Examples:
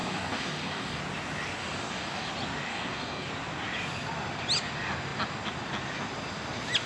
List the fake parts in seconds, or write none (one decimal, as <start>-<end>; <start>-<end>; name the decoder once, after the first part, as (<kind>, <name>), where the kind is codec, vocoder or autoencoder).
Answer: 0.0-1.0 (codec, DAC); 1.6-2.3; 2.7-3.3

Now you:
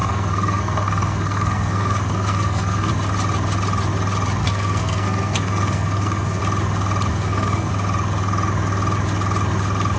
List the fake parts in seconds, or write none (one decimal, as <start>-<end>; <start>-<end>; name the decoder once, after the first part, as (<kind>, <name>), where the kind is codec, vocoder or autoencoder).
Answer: 0.0-2.9 (codec, SNAC); 4.4-6.4; 7.1-7.7

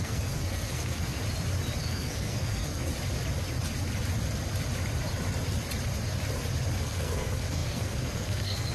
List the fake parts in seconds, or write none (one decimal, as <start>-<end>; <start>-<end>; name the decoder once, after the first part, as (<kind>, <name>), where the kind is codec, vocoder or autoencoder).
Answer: 0.0-1.2 (codec, SNAC); 1.8-2.9; 6.8-8.7